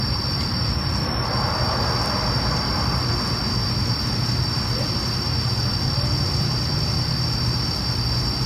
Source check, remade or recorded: recorded